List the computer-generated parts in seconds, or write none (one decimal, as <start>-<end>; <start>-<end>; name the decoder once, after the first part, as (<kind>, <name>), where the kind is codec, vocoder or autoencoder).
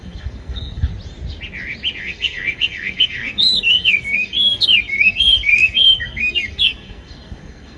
0.0-0.9 (codec, SNAC); 2.0-7.8